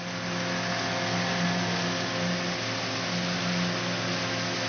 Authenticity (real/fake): real